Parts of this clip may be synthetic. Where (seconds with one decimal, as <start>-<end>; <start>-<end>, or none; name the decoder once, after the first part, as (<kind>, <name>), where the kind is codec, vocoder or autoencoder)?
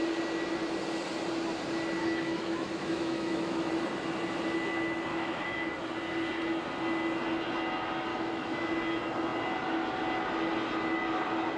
2.0-3.7 (autoencoder, DAC-VAE); 5.1-5.7; 8.1-8.7